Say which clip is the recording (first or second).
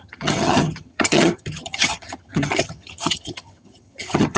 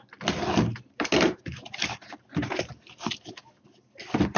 second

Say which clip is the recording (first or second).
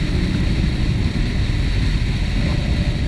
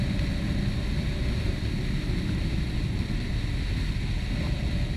second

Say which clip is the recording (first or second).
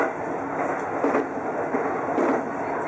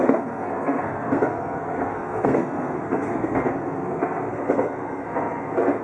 first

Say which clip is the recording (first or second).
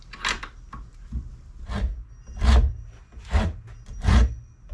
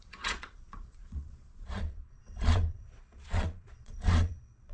first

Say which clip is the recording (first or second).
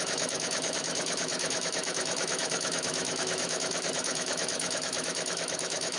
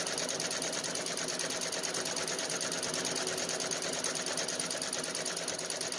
second